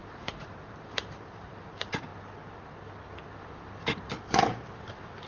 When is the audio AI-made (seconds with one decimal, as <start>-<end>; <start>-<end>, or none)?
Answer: 0.0-2.1; 3.8-5.3